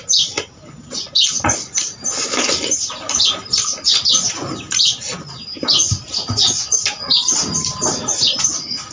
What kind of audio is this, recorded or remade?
recorded